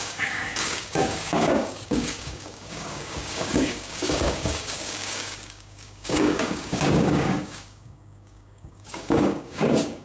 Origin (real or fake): fake